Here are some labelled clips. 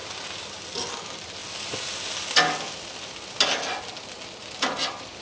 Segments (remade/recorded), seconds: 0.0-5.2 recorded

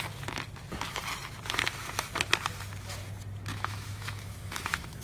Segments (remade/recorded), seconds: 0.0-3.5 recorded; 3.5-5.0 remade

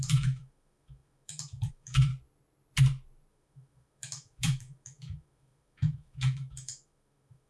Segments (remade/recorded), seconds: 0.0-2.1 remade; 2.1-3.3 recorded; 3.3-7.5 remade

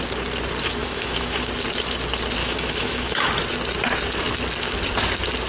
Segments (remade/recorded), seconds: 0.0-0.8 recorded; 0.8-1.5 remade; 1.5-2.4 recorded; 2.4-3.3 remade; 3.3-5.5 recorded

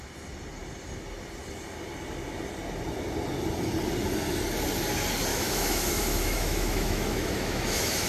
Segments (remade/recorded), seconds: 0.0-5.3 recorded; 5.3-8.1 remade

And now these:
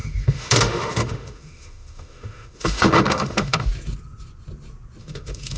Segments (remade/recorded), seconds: 0.0-3.7 remade; 3.7-5.0 recorded; 5.0-5.6 remade

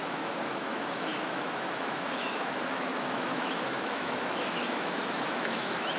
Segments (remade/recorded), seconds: 0.0-6.0 remade